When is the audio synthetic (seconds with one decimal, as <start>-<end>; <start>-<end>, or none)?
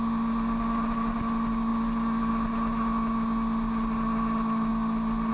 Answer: none